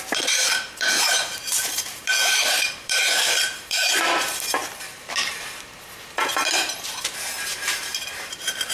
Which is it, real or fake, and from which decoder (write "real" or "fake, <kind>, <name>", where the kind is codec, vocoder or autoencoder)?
fake, vocoder, BigVGAN v2